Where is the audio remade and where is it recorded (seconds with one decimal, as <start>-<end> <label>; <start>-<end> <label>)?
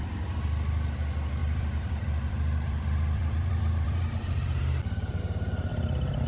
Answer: 0.0-1.4 recorded; 1.4-5.2 remade; 5.2-5.7 recorded; 5.7-6.3 remade